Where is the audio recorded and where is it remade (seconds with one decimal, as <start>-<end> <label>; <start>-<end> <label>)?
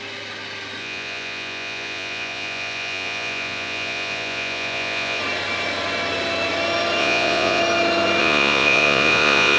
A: 0.0-0.8 recorded; 0.8-5.2 remade; 5.2-7.0 recorded; 7.0-7.6 remade; 7.6-8.2 recorded; 8.2-9.6 remade